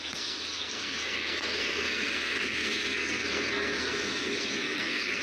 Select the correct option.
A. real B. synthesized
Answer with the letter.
B